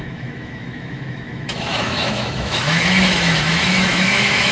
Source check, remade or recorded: remade